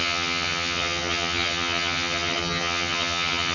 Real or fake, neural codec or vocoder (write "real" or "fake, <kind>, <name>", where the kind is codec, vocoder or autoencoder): fake, vocoder, HiFi-GAN